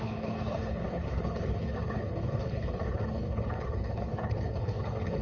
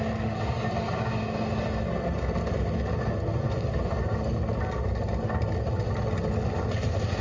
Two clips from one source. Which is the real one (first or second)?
second